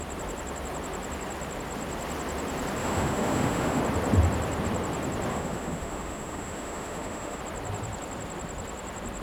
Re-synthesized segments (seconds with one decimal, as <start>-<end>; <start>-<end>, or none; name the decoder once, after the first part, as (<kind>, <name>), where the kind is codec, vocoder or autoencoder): 2.8-3.8 (autoencoder, DAC-VAE); 5.3-7.4